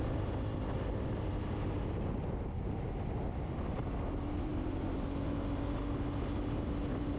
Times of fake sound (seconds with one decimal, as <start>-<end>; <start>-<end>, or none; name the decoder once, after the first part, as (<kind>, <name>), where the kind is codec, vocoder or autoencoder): none